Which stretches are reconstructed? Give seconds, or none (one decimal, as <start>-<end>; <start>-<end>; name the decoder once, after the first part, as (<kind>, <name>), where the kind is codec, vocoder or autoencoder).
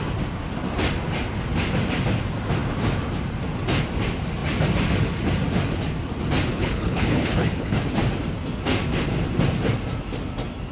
6.5-7.8 (codec, HILCodec)